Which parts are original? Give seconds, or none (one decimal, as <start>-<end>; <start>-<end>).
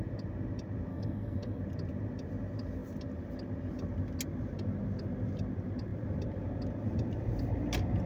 0.0-0.9; 1.6-8.1